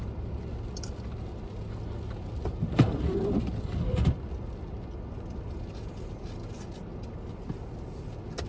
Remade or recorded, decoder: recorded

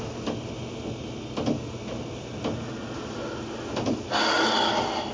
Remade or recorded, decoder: recorded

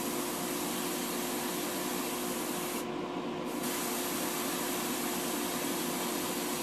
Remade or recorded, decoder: recorded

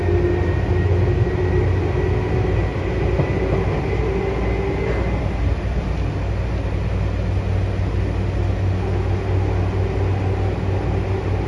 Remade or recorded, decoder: recorded